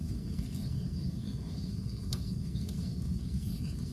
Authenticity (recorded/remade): remade